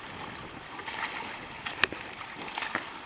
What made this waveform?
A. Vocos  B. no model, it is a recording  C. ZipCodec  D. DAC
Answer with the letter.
B